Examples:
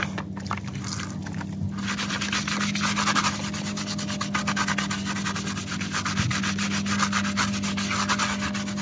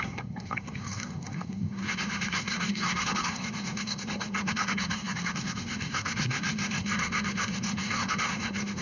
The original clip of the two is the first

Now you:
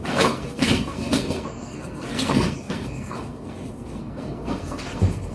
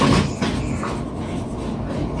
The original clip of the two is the second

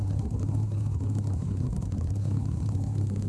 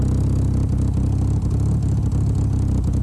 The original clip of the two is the second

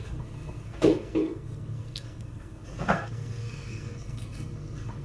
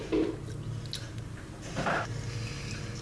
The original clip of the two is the second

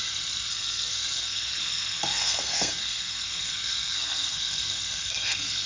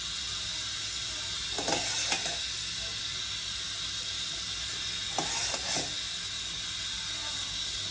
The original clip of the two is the second